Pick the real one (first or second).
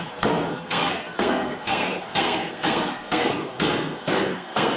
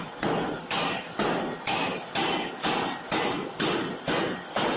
second